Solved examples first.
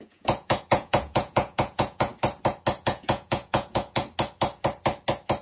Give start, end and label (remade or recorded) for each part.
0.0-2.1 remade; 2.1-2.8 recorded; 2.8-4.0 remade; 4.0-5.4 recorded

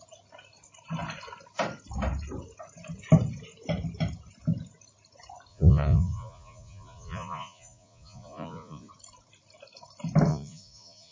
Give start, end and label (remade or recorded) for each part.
0.0-5.5 recorded; 5.5-8.9 remade; 8.9-10.3 recorded; 10.3-11.1 remade

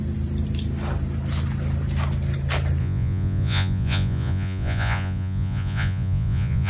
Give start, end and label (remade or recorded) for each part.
0.0-2.8 recorded; 2.8-6.7 remade

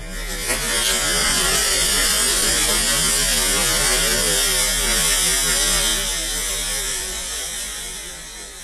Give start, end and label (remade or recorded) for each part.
0.0-1.2 recorded; 1.2-2.7 remade; 2.7-6.9 recorded; 6.9-8.6 remade

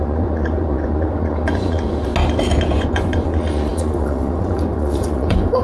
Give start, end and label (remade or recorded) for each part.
0.0-2.1 remade; 2.1-2.7 recorded; 2.7-5.6 remade